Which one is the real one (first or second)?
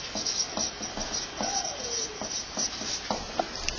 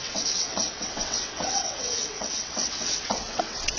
first